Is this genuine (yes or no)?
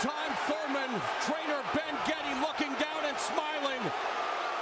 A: yes